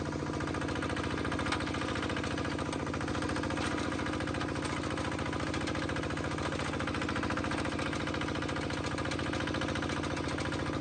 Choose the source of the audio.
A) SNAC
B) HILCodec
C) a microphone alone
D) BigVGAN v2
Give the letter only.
C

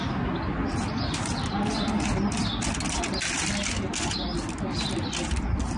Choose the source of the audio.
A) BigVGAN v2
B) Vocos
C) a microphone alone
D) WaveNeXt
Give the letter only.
C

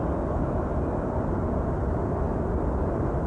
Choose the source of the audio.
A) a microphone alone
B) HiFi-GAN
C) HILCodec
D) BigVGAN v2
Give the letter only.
A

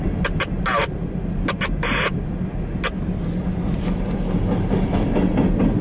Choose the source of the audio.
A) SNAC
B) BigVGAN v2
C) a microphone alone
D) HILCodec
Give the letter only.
C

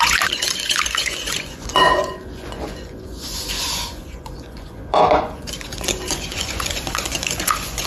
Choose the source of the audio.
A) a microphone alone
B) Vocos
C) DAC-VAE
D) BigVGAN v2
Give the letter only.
B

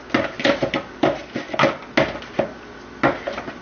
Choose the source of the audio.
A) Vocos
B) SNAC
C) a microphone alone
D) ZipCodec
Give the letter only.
C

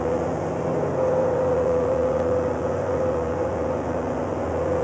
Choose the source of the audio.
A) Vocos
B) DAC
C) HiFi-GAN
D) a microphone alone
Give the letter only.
A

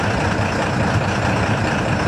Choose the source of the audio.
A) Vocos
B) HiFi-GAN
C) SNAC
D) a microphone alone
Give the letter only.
D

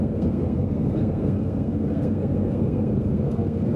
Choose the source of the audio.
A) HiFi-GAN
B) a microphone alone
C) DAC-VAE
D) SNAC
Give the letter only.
D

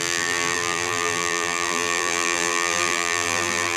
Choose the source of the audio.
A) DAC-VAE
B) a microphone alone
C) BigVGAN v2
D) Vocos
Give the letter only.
C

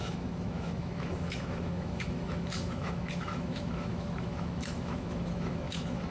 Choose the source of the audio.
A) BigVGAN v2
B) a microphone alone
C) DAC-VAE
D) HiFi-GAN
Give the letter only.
C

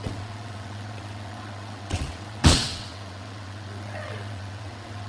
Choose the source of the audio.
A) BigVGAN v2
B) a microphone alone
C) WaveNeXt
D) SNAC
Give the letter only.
C